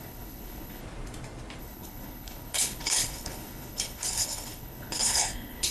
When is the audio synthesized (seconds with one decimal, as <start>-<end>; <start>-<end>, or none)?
0.0-0.8; 1.6-5.7